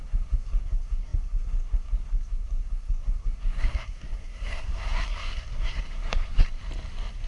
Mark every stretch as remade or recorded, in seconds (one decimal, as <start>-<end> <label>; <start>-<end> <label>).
0.0-6.6 remade; 6.6-7.3 recorded